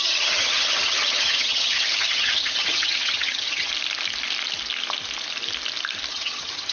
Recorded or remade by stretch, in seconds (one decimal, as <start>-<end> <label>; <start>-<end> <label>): 0.0-3.7 remade; 3.7-6.1 recorded; 6.1-6.7 remade